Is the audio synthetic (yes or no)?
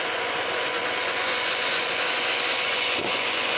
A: yes